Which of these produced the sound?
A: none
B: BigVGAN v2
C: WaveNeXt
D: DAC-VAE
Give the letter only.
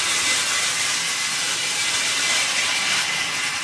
A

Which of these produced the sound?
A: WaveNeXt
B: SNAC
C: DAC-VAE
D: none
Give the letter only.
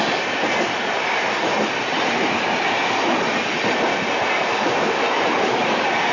D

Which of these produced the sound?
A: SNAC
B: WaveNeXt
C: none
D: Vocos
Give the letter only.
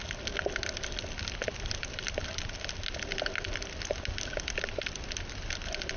C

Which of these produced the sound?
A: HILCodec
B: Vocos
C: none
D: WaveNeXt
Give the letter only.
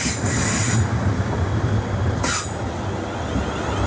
C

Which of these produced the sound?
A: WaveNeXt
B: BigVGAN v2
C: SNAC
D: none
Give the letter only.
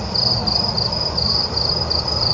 D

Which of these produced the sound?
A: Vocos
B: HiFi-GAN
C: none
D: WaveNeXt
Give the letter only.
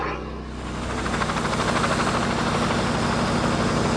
C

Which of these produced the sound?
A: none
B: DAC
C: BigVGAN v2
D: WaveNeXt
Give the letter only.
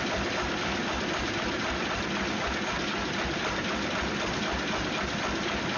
A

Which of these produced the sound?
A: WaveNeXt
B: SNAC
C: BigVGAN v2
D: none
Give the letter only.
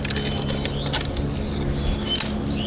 D